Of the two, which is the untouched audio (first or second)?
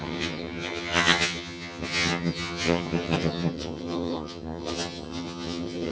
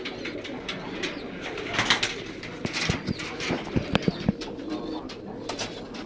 second